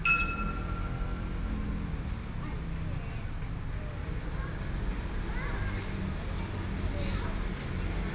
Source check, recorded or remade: recorded